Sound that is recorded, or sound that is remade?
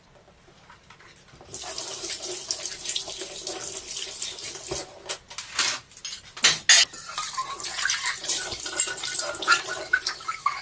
recorded